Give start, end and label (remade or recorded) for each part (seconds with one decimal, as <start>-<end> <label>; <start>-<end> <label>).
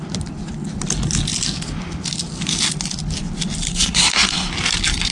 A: 0.0-3.7 recorded; 3.7-4.5 remade; 4.5-5.1 recorded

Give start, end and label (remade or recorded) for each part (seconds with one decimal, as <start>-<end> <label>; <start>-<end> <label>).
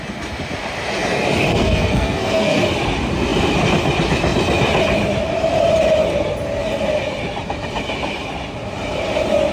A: 0.0-1.5 recorded; 1.5-2.6 remade; 2.6-9.5 recorded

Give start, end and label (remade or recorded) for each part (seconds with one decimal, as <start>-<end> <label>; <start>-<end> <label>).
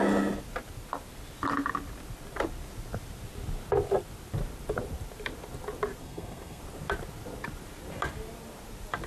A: 0.0-6.0 recorded; 6.0-6.6 remade; 6.6-9.1 recorded